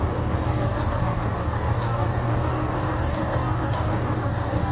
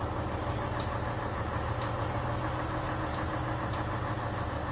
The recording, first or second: second